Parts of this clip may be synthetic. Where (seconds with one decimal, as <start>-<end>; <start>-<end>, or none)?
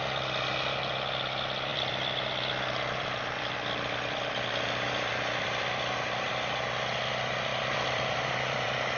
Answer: 1.7-6.3; 7.5-9.0